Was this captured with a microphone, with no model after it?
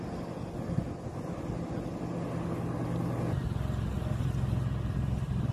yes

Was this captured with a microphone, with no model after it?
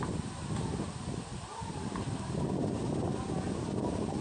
yes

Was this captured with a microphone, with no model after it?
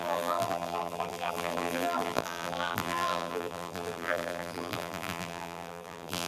no